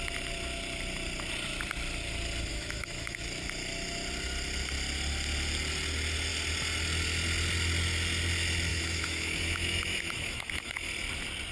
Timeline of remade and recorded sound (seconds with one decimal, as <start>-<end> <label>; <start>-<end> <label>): 0.0-2.5 recorded; 2.5-3.2 remade; 3.2-8.7 recorded; 8.7-10.9 remade; 10.9-11.5 recorded